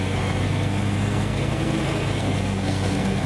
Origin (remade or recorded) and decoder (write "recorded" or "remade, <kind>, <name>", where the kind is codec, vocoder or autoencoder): remade, codec, SNAC